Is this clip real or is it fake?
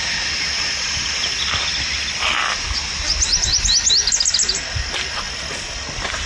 real